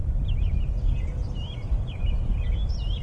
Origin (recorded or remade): recorded